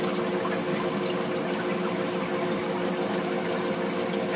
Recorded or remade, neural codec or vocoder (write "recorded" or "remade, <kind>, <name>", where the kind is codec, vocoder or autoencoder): recorded